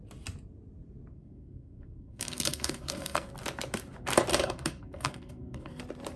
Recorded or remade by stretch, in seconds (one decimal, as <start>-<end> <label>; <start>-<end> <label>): 0.0-1.1 recorded; 1.1-3.3 remade; 3.3-4.3 recorded; 4.3-5.8 remade; 5.8-6.2 recorded